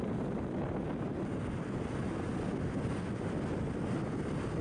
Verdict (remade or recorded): recorded